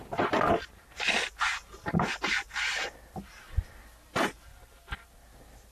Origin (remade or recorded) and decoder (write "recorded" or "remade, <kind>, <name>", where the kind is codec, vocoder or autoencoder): recorded